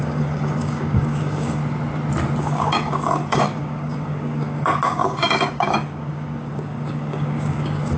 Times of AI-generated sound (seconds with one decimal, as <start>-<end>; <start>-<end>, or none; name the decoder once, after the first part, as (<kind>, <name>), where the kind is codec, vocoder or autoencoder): 0.0-1.6 (codec, DAC); 2.4-8.0